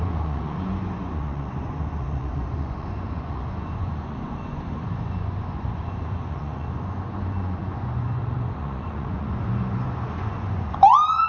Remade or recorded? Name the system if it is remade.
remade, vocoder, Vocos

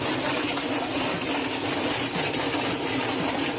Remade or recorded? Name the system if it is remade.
recorded